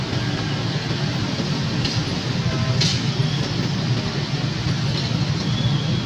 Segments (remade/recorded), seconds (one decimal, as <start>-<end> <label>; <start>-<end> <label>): 0.0-6.1 recorded